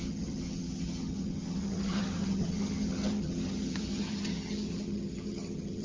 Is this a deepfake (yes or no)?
yes